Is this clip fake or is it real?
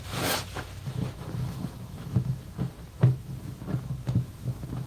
fake